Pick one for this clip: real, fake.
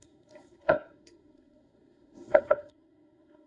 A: fake